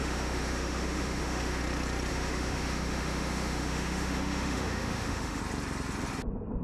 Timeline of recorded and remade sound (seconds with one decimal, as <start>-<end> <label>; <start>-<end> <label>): 0.0-1.6 remade; 1.6-2.1 recorded; 2.1-5.4 remade; 5.4-6.6 recorded